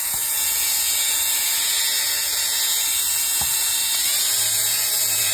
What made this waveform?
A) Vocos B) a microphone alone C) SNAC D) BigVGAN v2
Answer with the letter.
A